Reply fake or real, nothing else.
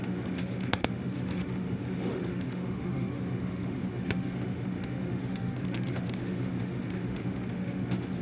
fake